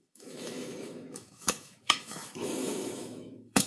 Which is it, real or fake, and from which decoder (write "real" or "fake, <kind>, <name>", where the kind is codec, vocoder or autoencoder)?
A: fake, autoencoder, DAC-VAE